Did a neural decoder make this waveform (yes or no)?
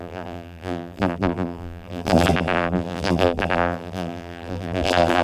yes